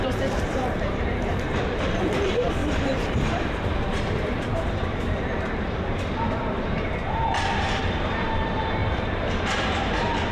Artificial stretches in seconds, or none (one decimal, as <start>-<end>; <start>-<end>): 0.0-10.3